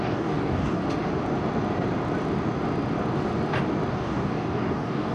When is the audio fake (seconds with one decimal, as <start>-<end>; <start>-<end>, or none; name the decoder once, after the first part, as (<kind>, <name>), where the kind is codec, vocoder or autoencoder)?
0.0-0.8 (codec, DAC); 3.9-5.1